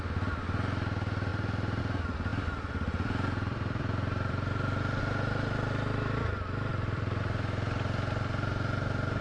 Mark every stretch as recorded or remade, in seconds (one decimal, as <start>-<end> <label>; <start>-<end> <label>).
0.0-2.3 recorded; 2.3-5.0 remade; 5.0-6.7 recorded; 6.7-7.2 remade; 7.2-9.2 recorded